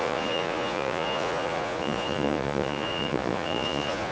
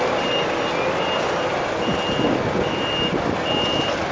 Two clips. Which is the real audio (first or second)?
second